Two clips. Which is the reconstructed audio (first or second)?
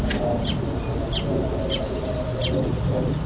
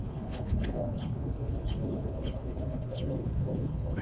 second